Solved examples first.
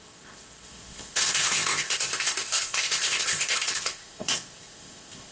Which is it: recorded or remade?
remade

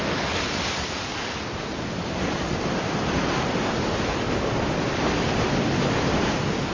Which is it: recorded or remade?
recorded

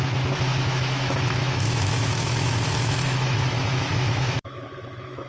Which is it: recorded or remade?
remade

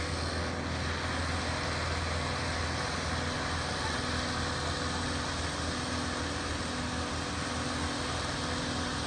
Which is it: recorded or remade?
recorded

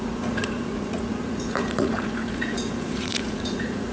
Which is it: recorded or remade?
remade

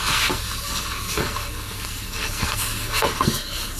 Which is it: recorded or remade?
remade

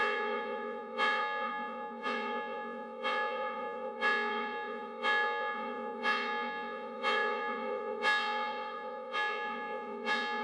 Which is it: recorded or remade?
remade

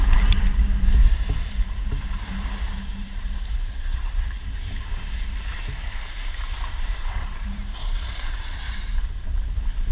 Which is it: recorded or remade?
remade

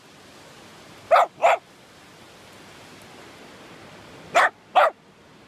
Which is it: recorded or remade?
recorded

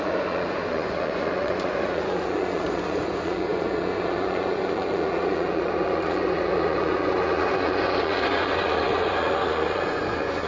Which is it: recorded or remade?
remade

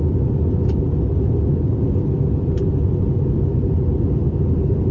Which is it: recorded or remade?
recorded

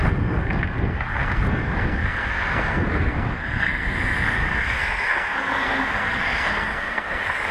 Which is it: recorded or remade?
remade